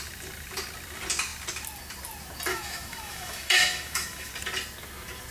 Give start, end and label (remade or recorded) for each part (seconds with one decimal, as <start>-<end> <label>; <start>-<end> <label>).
0.0-2.5 recorded; 2.5-4.3 remade; 4.3-5.3 recorded